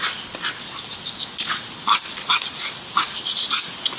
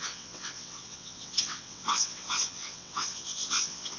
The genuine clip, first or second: first